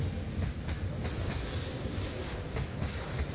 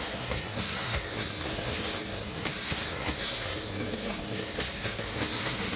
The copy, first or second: second